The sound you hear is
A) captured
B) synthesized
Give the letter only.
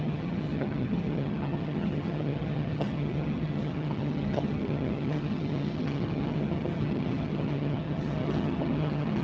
B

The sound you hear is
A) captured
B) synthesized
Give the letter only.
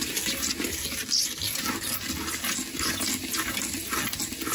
A